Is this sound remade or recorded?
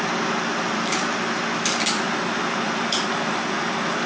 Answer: recorded